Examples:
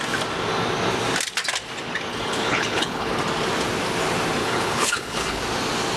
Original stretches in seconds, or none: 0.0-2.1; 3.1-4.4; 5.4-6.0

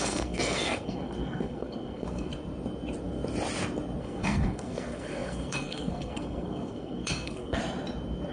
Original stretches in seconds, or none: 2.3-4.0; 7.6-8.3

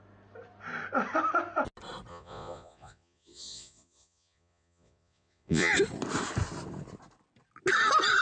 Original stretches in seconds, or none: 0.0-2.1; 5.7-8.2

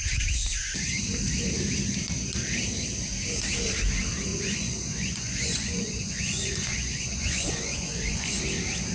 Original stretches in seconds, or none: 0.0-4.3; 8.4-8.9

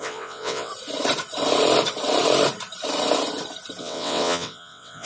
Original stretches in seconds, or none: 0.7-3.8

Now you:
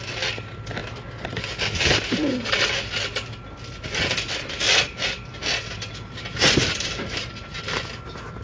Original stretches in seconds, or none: 0.0-8.4

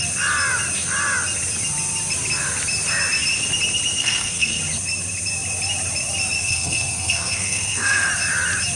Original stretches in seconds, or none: 0.0-4.0; 4.6-6.4; 8.1-8.8